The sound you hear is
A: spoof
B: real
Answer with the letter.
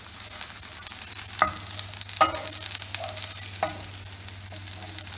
B